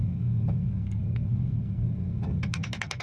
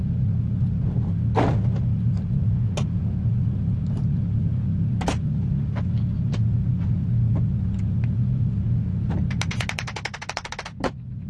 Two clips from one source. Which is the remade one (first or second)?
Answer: first